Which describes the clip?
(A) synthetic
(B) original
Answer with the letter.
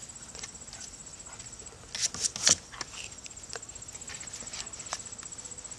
B